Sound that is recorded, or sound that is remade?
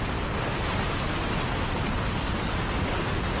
recorded